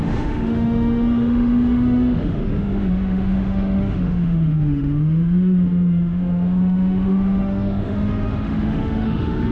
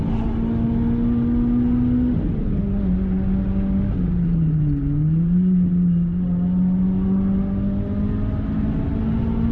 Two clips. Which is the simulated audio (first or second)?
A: first